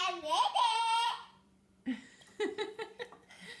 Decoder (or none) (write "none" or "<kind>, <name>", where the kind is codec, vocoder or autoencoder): vocoder, BigVGAN v2